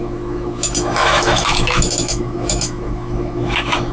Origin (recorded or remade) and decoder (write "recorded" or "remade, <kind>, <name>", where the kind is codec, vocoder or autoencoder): remade, autoencoder, DAC-VAE